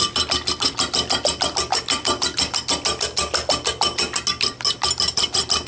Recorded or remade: recorded